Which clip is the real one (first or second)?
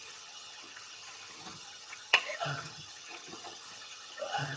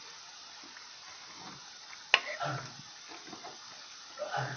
second